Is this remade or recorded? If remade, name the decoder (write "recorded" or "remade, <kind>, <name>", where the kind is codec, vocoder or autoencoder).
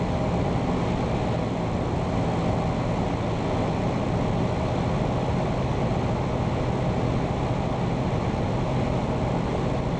recorded